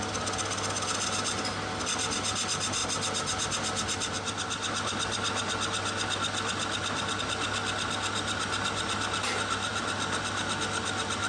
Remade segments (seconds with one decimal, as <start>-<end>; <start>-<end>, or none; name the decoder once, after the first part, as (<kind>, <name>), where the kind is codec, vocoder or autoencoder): none